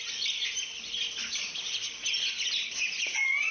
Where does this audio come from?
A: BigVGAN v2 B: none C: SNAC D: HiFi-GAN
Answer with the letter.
B